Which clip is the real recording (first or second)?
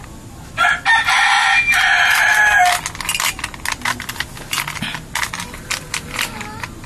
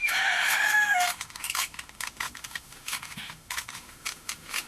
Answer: first